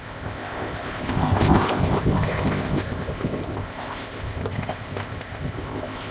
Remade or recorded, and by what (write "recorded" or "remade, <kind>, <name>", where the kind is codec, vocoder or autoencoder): remade, codec, ZipCodec